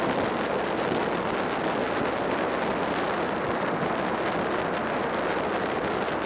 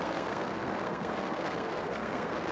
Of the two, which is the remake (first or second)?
second